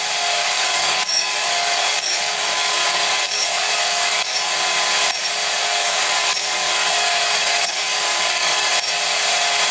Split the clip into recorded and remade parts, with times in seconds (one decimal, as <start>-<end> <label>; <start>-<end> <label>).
0.0-0.4 recorded; 0.4-4.6 remade; 4.6-5.6 recorded; 5.6-8.7 remade; 8.7-9.7 recorded